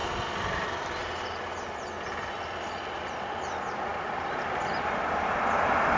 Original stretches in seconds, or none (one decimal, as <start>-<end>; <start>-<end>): 0.0-6.0